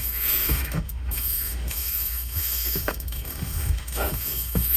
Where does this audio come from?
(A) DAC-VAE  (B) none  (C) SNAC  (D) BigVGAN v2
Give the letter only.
A